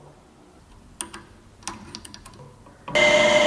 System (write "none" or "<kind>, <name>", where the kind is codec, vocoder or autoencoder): none